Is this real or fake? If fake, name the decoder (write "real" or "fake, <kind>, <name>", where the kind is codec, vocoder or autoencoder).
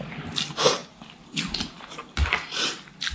real